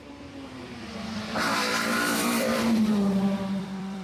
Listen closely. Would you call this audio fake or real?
fake